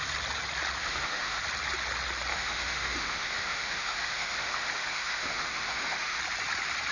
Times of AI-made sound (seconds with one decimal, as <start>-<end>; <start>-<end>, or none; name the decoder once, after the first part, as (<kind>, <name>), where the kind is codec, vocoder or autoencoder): 0.8-1.4 (autoencoder, DAC-VAE); 2.3-6.2